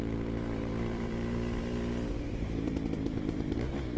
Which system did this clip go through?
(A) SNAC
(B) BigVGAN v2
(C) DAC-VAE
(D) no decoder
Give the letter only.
B